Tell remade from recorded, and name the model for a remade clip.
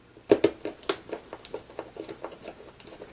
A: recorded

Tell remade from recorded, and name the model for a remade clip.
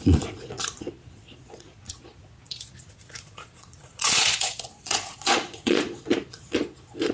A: remade, vocoder, Vocos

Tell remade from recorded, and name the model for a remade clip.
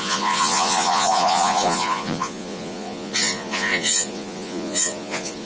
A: remade, vocoder, Vocos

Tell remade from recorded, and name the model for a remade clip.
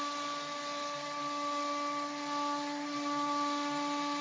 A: recorded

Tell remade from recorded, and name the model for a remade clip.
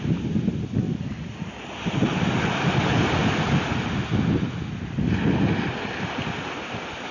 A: recorded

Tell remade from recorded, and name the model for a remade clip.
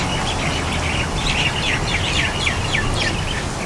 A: recorded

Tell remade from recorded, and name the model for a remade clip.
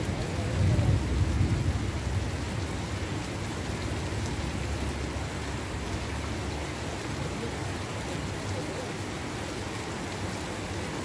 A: recorded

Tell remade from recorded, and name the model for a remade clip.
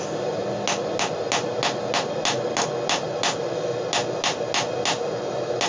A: recorded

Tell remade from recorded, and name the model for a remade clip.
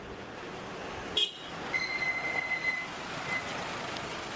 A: recorded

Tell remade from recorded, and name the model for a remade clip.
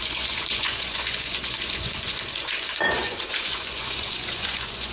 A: remade, vocoder, Vocos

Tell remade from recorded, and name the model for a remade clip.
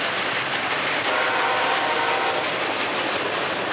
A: recorded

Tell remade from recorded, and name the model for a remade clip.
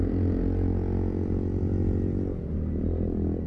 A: recorded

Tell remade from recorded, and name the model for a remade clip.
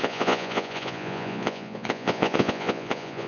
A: remade, vocoder, Vocos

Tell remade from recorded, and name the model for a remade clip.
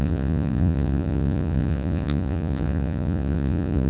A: remade, vocoder, Vocos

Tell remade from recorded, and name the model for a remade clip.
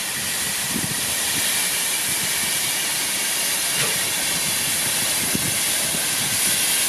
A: recorded